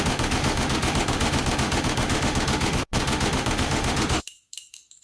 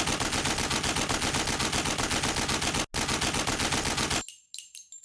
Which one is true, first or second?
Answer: second